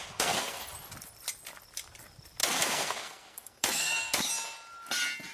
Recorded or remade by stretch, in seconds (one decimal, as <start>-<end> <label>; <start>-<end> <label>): 0.0-0.6 remade; 0.6-2.4 recorded; 2.4-4.3 remade; 4.3-5.3 recorded